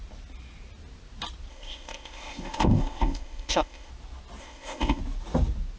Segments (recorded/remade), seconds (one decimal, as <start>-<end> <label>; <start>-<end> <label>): 0.0-1.5 recorded; 1.5-3.9 remade; 3.9-4.4 recorded; 4.4-5.0 remade; 5.0-5.8 recorded